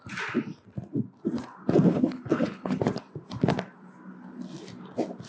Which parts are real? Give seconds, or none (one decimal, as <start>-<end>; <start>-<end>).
0.0-1.9; 2.8-5.3